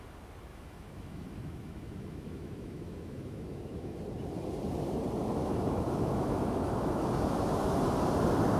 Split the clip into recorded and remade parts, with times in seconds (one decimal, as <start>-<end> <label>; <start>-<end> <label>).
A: 0.0-0.5 recorded; 0.5-4.0 remade; 4.0-5.4 recorded; 5.4-7.8 remade; 7.8-8.6 recorded